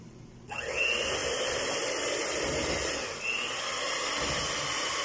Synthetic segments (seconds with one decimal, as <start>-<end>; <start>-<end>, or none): none